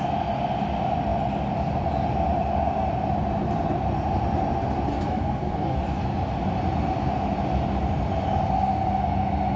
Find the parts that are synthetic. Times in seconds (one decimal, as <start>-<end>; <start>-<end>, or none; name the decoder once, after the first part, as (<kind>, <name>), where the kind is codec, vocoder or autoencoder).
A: 4.9-5.8 (codec, DAC)